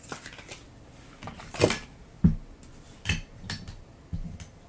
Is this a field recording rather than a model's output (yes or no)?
yes